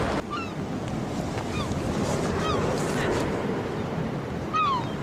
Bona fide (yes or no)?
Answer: yes